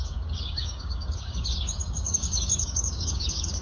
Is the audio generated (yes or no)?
yes